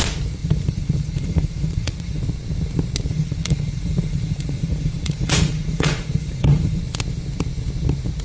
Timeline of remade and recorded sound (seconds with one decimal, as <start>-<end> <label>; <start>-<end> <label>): 0.0-0.4 recorded; 0.4-2.2 remade; 2.2-3.1 recorded; 3.1-6.8 remade; 6.8-8.2 recorded